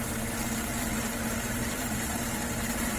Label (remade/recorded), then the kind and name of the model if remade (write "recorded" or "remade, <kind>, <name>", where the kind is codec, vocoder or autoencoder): remade, vocoder, BigVGAN v2